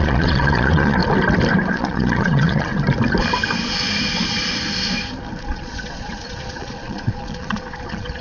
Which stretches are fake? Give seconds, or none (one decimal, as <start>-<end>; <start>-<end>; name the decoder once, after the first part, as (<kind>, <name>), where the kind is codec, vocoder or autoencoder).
0.0-1.0 (vocoder, Vocos); 1.7-2.7; 5.4-8.2